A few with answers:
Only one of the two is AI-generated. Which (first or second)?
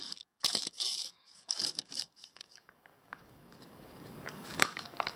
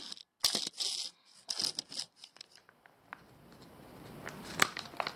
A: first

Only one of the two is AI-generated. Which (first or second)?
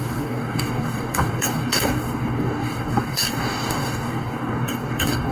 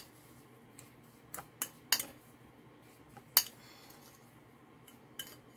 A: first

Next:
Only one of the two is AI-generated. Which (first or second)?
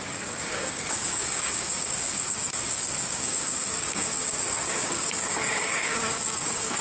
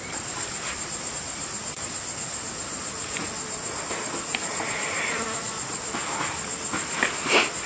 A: first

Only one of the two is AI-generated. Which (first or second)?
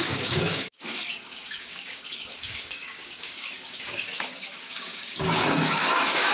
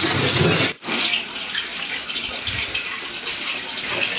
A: first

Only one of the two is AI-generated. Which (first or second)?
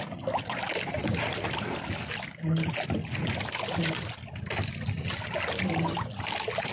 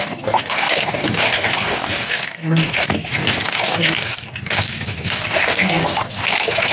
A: second